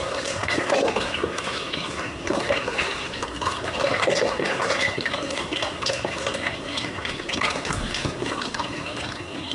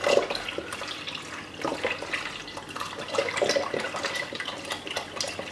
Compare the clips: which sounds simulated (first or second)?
first